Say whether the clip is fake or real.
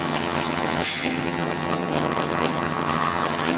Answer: fake